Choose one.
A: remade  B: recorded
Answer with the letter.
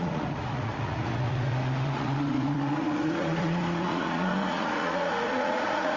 A